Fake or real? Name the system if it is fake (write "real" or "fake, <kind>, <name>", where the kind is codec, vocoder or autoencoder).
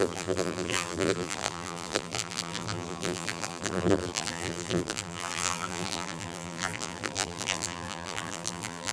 fake, vocoder, BigVGAN v2